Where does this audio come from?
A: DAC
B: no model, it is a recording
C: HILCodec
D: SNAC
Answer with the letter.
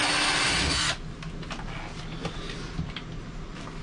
B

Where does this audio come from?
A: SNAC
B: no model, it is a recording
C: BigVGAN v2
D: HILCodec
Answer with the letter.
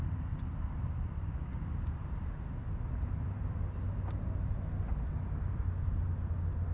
B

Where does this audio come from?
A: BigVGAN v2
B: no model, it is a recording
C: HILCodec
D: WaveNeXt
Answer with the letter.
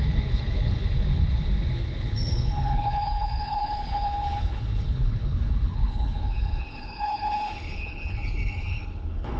C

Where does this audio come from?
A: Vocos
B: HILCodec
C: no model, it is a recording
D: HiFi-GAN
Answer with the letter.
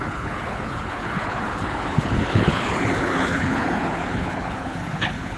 B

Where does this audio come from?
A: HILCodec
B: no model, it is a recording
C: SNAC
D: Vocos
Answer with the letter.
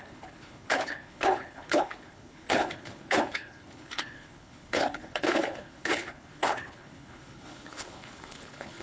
A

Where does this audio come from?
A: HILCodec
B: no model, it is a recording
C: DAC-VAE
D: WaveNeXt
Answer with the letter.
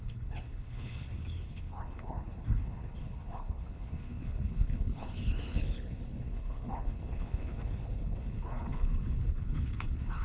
A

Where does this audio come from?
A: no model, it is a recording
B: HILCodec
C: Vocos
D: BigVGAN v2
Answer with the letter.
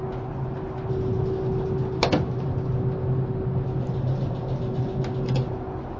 A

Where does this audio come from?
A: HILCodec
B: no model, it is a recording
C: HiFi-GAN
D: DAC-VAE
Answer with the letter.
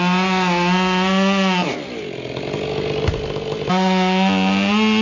B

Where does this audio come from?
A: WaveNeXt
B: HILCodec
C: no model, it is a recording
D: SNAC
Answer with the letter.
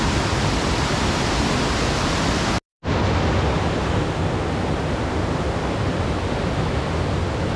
C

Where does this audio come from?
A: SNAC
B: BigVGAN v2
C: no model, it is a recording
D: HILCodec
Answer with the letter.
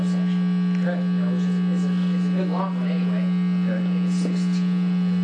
C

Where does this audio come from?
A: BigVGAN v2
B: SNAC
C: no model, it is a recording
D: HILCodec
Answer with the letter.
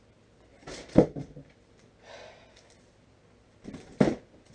C